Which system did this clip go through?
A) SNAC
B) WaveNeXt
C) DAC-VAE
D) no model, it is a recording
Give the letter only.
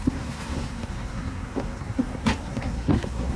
A